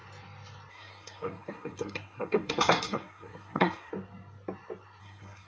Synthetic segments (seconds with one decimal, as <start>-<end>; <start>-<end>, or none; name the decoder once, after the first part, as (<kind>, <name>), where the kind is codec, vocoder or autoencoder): 0.7-3.9 (codec, SNAC); 5.0-5.5